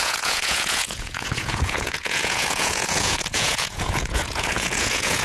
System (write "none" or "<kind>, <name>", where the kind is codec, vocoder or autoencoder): vocoder, Vocos